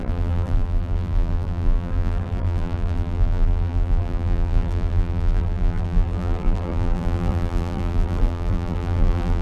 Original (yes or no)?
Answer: no